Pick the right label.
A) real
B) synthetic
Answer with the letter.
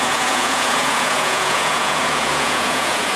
B